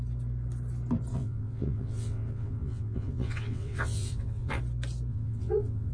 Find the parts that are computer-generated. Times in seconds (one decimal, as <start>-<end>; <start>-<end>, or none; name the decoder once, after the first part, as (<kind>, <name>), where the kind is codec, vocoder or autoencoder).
1.1-4.6 (vocoder, WaveNeXt); 5.1-5.9